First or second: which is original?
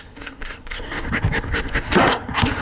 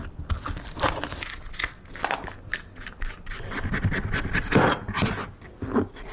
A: second